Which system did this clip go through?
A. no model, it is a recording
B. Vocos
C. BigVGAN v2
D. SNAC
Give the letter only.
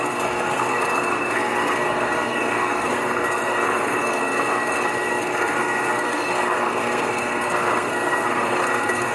D